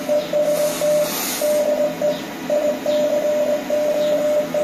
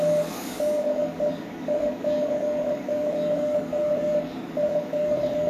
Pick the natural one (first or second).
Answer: first